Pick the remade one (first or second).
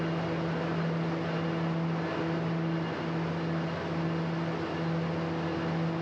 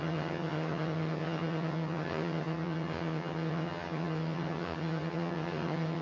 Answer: second